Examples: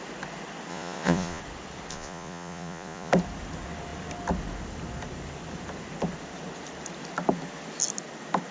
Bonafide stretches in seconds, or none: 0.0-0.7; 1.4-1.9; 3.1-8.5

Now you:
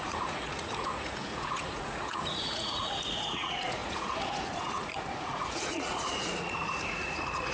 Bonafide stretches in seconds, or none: none

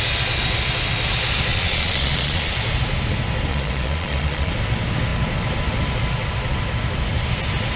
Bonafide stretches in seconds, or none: 0.0-1.5; 2.5-3.5; 4.5-7.8

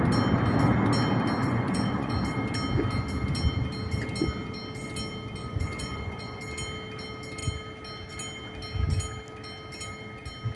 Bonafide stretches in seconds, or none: 0.0-1.4; 2.2-5.4; 6.4-10.6

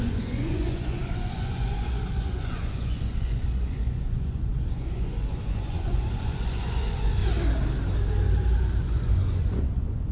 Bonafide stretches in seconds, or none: 7.2-8.8